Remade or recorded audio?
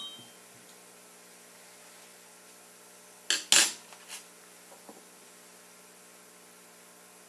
recorded